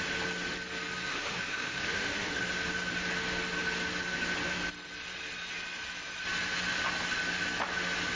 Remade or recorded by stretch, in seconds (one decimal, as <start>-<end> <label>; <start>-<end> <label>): 0.0-1.1 recorded; 1.1-2.4 remade; 2.4-8.2 recorded